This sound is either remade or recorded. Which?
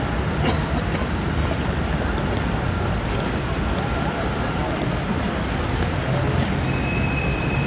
recorded